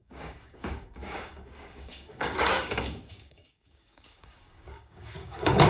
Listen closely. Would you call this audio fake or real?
fake